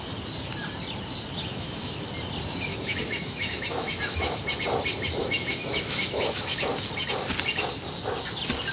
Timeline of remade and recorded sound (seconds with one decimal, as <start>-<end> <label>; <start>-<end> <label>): 0.0-1.4 recorded; 1.4-2.0 remade; 2.0-2.7 recorded; 2.7-4.4 remade; 4.4-5.2 recorded; 5.2-6.7 remade; 6.7-8.7 recorded